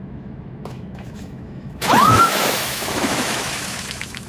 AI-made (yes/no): yes